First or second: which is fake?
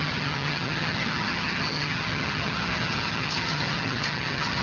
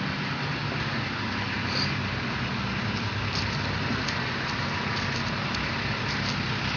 first